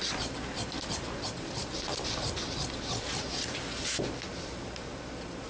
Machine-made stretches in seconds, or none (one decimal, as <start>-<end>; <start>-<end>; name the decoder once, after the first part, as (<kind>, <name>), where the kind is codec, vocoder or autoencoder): none